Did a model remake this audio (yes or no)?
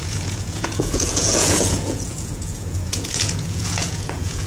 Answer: yes